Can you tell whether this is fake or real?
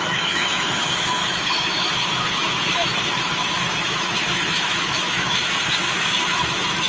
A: fake